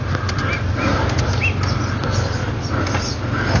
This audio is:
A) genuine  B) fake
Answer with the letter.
A